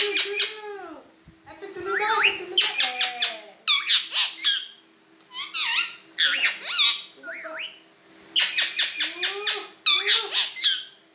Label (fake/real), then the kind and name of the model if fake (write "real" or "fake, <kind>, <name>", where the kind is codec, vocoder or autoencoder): real